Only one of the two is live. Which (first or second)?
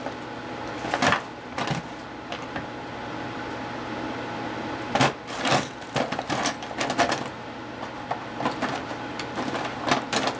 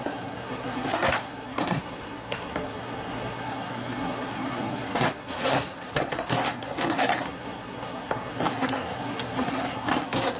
first